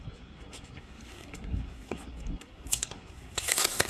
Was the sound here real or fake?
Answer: fake